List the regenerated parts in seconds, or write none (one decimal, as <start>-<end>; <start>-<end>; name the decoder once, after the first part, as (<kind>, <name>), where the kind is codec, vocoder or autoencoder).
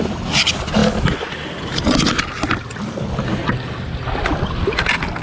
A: none